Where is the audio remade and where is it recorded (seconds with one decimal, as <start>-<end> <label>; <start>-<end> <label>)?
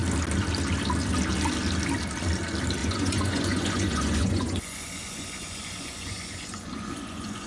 0.0-2.8 recorded; 2.8-7.5 remade